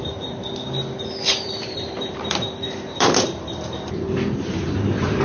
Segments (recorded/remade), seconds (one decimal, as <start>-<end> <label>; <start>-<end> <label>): 0.0-0.4 remade; 0.4-1.3 recorded; 1.3-5.2 remade